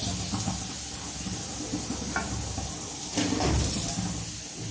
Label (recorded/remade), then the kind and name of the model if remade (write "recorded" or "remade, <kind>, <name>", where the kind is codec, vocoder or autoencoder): recorded